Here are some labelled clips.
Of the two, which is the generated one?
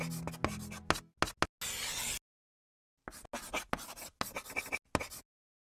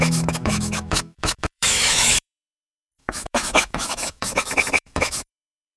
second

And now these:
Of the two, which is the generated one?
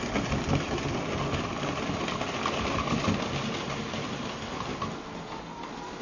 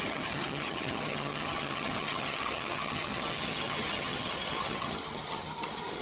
second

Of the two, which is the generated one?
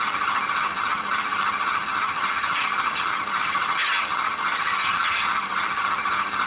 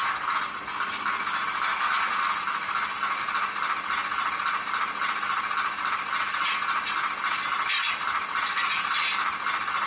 first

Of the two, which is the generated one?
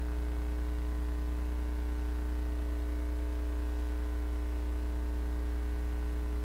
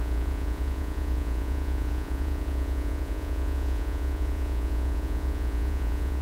second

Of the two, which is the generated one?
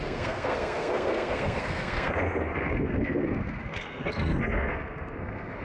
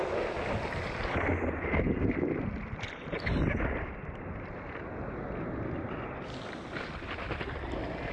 first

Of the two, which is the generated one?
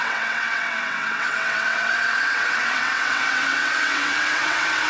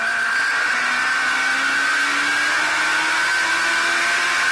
first